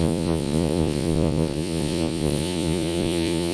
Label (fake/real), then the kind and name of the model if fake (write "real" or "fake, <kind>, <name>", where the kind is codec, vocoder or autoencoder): fake, vocoder, Vocos